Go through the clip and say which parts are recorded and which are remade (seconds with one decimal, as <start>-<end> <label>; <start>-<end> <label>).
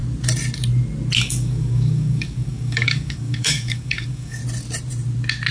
0.0-1.2 recorded; 1.2-4.4 remade; 4.4-5.5 recorded